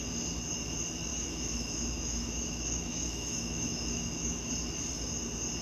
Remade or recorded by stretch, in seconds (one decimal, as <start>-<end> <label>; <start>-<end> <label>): 0.0-1.1 recorded; 1.1-4.5 remade; 4.5-5.6 recorded